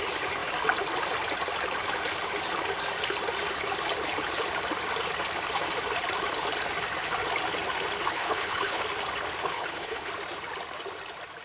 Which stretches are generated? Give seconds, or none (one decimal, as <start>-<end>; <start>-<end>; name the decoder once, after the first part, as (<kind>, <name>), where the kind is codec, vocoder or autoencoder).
8.1-8.8 (codec, HILCodec); 9.4-10.1